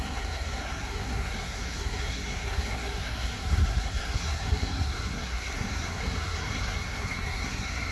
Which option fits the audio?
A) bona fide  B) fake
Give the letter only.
B